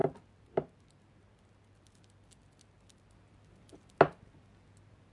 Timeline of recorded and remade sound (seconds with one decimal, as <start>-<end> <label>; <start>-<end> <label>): 0.0-5.1 recorded